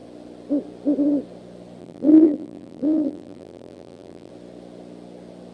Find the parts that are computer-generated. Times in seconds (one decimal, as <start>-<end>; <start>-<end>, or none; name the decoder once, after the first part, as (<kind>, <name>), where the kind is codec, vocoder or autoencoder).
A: 1.8-4.3 (vocoder, BigVGAN v2)